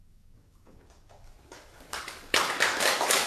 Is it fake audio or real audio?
fake